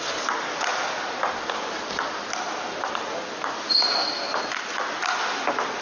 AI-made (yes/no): no